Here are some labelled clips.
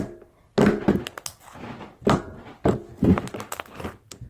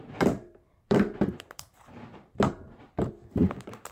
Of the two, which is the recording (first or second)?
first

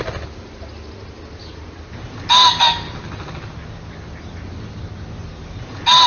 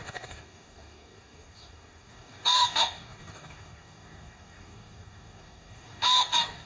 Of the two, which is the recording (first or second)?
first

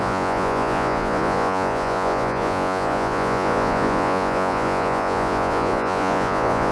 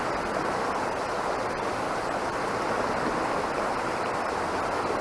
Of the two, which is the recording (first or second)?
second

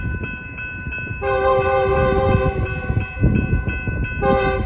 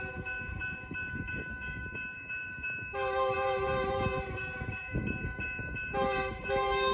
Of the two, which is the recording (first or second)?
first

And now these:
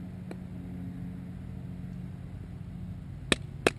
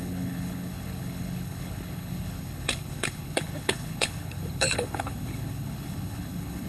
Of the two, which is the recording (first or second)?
first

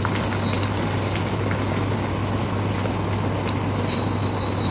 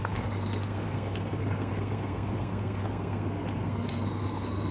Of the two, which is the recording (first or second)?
first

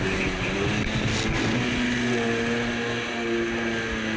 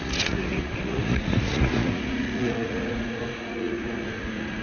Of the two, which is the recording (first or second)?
first